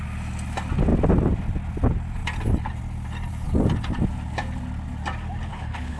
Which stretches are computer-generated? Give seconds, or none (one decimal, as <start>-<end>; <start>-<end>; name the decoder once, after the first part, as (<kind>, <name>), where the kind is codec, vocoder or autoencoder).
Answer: 5.5-6.0 (codec, HILCodec)